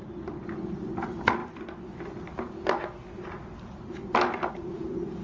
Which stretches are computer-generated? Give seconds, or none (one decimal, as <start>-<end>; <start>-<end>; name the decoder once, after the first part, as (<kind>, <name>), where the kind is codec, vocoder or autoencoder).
none